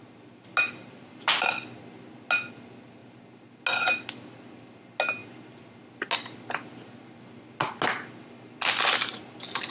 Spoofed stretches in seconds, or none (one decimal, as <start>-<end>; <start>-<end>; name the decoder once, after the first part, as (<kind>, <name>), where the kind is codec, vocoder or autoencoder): none